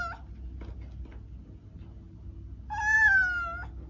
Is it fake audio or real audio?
real